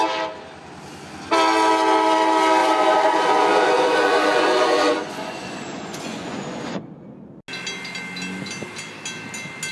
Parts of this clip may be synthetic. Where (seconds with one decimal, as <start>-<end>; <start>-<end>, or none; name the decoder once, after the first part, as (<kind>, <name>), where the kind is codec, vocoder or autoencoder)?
2.6-6.8 (vocoder, Vocos)

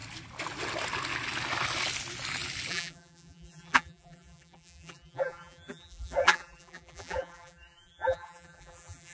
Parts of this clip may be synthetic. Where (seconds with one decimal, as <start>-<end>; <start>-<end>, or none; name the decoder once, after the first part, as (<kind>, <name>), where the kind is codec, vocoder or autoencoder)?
2.7-9.1 (vocoder, BigVGAN v2)

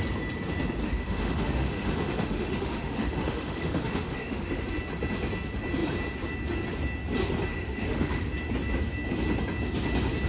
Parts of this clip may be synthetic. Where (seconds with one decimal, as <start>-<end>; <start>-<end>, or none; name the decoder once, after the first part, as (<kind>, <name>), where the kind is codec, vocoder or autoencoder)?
0.8-4.6 (autoencoder, DAC-VAE); 7.5-8.3

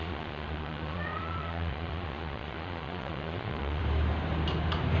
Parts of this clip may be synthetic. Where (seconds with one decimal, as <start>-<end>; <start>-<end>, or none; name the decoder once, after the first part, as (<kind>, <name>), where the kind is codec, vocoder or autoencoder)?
0.0-3.8 (vocoder, Vocos)

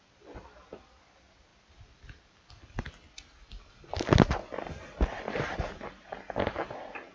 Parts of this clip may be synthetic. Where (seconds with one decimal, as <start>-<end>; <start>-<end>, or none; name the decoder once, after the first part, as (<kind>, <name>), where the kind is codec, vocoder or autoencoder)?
none